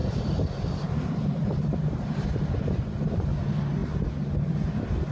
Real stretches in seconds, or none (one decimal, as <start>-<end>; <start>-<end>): 3.1-5.1

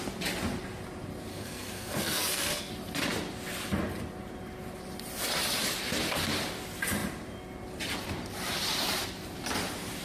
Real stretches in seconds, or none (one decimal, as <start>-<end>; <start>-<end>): 0.0-1.3; 2.7-10.0

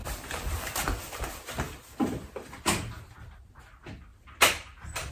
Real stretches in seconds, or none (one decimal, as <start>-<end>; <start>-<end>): 3.1-5.1

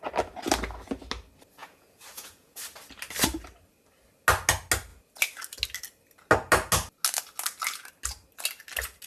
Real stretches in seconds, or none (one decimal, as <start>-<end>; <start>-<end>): 0.0-1.6; 2.6-9.1

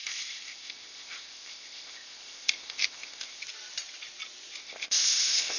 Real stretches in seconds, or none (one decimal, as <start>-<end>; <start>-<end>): 3.4-4.6

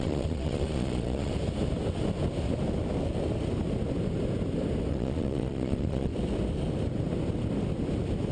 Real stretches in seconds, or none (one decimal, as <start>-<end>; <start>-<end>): 1.3-4.9; 6.1-8.3

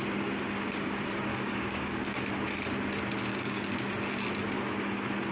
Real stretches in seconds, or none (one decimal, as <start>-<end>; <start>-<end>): 0.0-1.3; 2.2-3.3; 3.9-5.3

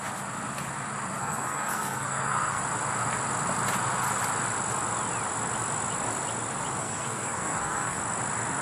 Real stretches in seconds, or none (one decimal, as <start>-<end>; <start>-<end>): 0.0-1.2; 2.6-6.8; 8.0-8.6